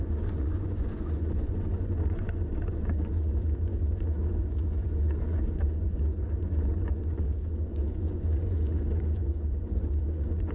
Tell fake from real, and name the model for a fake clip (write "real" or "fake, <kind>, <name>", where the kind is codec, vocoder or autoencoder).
fake, vocoder, Vocos